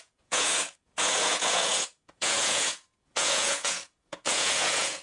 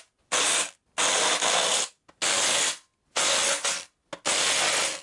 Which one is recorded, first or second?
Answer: second